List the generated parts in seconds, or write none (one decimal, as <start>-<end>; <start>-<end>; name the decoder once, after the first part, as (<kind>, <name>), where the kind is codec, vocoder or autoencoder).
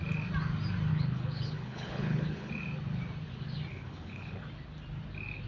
0.9-2.5 (codec, HILCodec); 3.7-4.4